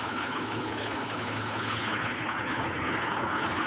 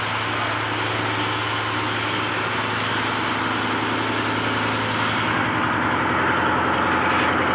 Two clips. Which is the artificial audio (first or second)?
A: first